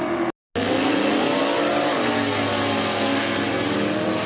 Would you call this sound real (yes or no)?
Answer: yes